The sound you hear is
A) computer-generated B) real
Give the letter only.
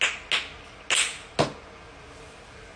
B